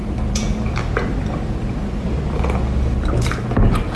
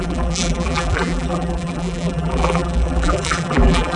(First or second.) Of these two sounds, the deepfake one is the second